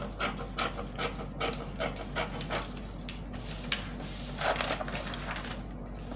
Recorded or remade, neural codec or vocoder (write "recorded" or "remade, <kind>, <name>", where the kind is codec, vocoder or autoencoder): recorded